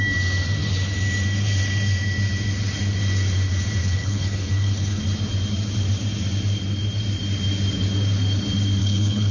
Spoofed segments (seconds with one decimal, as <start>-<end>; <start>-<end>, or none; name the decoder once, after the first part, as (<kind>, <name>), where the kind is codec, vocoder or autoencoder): 3.8-5.0 (codec, HILCodec); 8.8-9.3